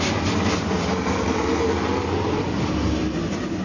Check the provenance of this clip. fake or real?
real